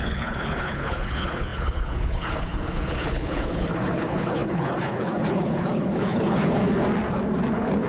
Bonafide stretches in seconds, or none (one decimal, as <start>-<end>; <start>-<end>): 6.6-7.5